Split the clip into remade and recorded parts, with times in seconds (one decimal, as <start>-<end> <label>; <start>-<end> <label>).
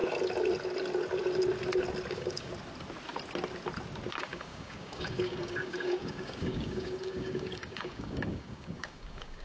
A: 0.0-2.1 recorded; 2.1-2.5 remade; 2.5-4.1 recorded; 4.1-9.4 remade